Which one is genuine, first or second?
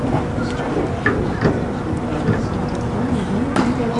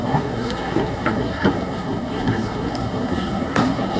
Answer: first